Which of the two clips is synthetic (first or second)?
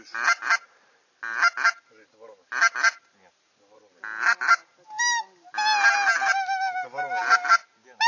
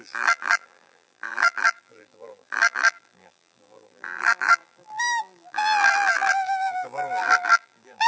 second